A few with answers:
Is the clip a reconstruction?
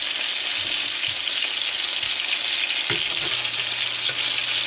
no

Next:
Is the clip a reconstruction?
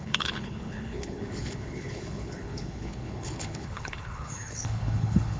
yes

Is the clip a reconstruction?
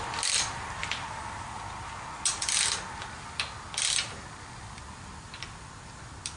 no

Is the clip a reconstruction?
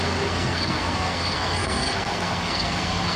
yes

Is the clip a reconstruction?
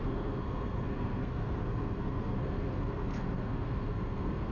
yes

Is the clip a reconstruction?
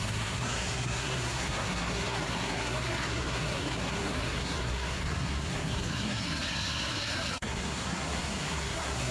yes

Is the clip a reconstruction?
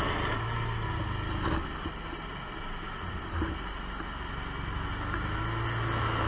no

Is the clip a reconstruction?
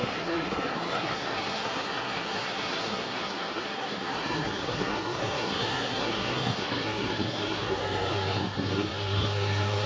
yes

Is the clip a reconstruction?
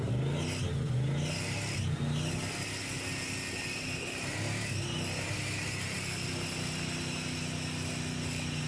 no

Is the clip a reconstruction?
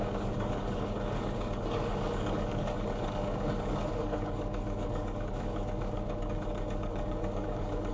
yes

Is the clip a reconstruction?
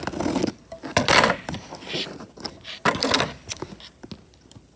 no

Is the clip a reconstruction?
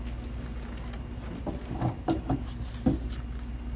no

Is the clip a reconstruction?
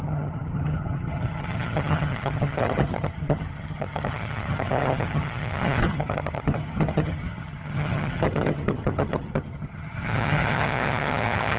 yes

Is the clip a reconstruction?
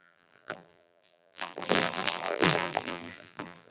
yes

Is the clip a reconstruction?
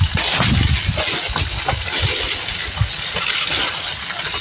no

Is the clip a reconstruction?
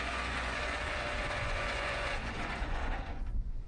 yes